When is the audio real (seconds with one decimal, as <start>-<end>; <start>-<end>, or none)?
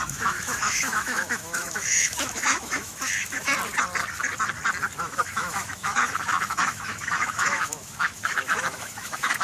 3.5-5.0